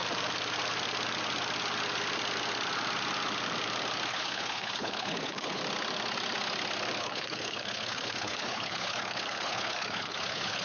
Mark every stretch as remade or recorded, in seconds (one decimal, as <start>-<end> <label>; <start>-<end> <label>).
0.0-4.1 recorded; 4.1-5.6 remade; 5.6-7.0 recorded; 7.0-10.6 remade